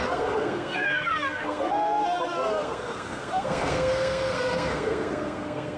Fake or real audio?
fake